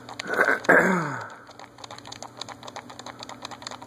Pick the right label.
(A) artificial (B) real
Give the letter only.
B